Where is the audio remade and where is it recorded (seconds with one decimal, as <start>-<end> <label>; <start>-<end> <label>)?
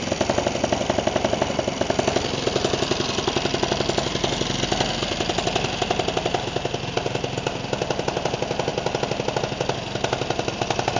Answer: 0.0-11.0 recorded